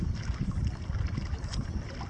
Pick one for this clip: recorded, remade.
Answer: recorded